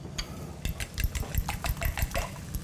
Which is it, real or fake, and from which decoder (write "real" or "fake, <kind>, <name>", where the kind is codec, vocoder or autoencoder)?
real